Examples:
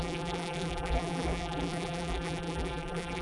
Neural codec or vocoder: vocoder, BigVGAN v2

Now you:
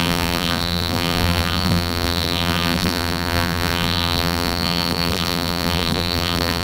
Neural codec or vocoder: vocoder, BigVGAN v2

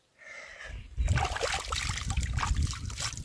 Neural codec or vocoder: none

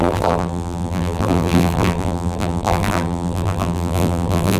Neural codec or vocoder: vocoder, BigVGAN v2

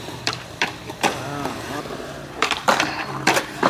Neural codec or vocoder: vocoder, BigVGAN v2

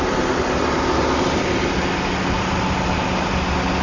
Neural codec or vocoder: none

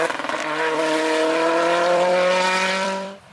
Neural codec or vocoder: vocoder, BigVGAN v2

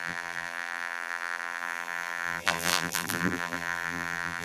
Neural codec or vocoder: vocoder, BigVGAN v2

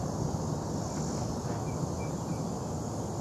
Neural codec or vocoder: none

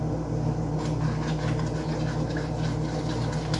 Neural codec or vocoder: none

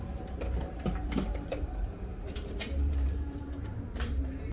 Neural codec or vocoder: vocoder, BigVGAN v2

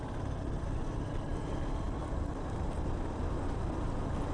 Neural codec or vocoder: none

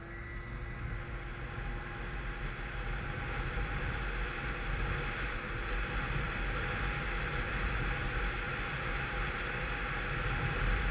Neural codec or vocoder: none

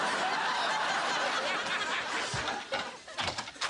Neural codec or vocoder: none